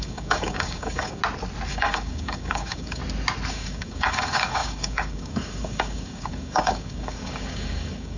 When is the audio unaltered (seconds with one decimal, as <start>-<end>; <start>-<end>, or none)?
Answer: 1.2-1.7; 3.0-3.5